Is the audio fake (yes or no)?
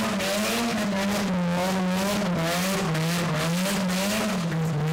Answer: no